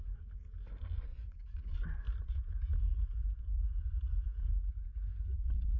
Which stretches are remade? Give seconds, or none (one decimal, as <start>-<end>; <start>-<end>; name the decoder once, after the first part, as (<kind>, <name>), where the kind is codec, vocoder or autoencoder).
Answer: 1.1-1.6 (vocoder, Vocos); 2.9-3.6